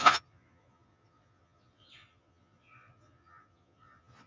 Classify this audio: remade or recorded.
remade